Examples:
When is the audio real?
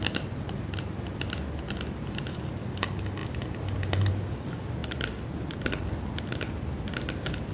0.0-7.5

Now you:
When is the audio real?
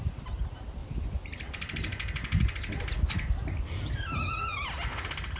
0.0-5.4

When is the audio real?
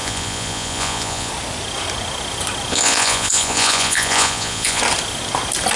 1.3-2.7; 4.8-5.8